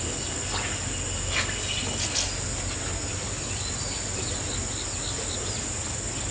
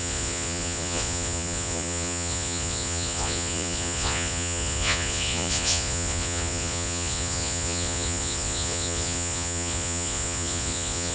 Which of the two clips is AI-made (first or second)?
second